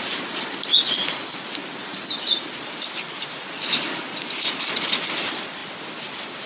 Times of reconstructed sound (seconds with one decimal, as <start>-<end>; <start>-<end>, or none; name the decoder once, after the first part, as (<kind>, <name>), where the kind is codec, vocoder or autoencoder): none